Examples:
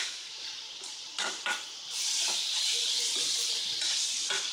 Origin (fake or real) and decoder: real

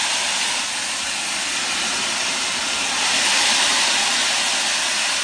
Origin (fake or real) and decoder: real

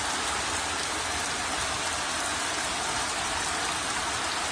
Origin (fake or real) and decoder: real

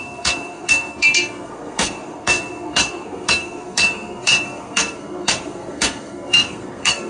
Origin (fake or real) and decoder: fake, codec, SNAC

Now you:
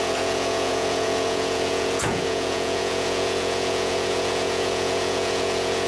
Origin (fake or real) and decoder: fake, vocoder, Vocos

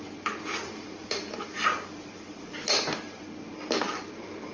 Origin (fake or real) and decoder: real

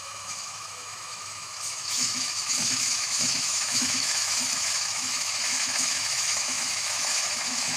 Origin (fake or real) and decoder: fake, autoencoder, DAC-VAE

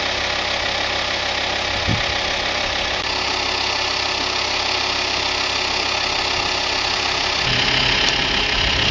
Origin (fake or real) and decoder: real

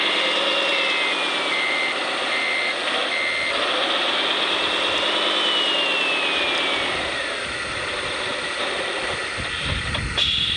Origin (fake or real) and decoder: real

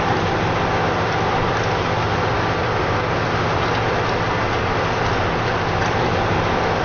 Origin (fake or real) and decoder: real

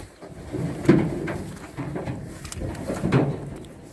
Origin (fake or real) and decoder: real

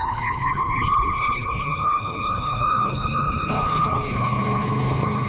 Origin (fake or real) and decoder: fake, codec, HILCodec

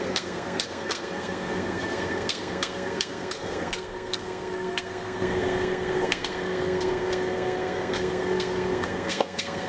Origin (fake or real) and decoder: fake, codec, SNAC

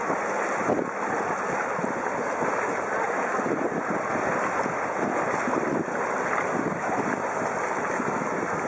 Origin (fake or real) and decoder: real